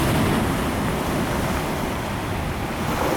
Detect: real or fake real